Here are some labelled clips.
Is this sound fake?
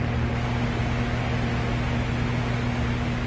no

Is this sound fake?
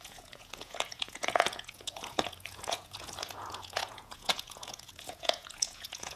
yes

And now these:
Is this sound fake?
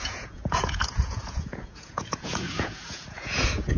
yes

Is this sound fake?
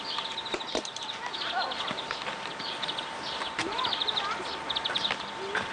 no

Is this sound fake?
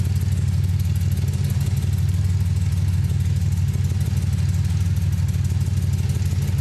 no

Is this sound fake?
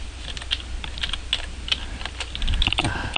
no